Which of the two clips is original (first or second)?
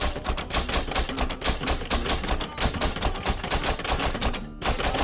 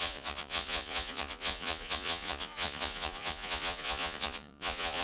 first